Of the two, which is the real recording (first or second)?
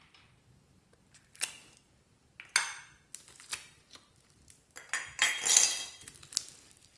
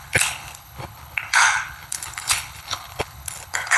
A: first